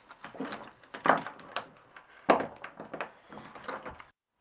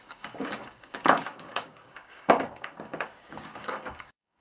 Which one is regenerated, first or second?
second